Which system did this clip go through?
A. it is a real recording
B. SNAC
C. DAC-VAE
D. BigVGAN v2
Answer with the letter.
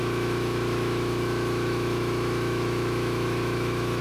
C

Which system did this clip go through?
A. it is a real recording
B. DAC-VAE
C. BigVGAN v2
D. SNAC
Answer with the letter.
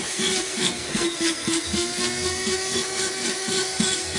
D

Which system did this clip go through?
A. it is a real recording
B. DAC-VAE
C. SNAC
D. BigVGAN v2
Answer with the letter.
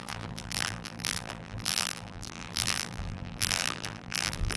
D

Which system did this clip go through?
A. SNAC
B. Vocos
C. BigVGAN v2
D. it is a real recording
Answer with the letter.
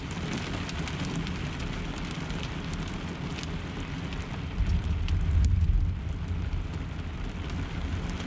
D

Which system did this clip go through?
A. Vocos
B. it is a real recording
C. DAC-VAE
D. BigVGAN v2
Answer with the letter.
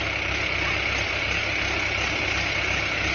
B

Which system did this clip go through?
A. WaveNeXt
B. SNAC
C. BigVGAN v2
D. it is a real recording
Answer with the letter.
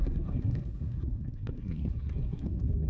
B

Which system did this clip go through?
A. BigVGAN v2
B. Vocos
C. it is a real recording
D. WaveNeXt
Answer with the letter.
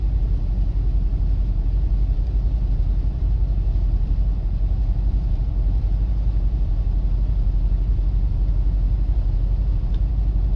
A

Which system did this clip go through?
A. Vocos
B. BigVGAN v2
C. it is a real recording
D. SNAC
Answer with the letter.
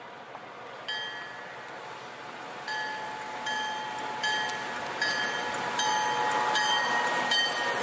C